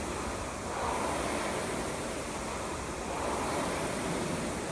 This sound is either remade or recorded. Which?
recorded